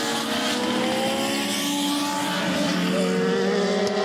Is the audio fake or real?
real